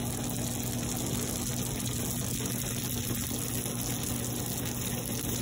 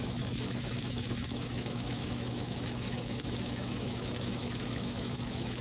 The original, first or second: first